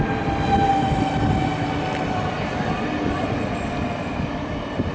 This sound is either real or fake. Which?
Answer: real